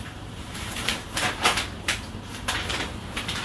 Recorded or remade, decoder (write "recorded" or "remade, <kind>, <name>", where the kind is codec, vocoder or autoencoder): remade, vocoder, BigVGAN v2